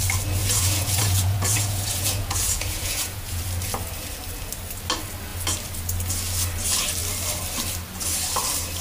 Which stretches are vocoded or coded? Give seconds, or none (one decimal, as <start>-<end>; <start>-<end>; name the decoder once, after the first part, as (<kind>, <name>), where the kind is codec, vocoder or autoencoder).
0.4-3.4 (vocoder, Vocos)